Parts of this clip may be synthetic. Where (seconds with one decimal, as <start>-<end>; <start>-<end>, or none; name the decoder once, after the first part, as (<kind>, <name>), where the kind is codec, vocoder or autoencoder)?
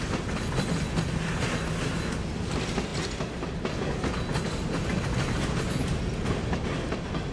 none